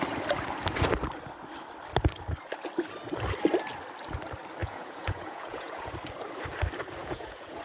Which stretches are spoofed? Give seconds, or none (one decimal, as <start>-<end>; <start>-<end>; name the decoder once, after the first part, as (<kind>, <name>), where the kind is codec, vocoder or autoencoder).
4.6-5.9 (vocoder, Vocos); 7.0-7.6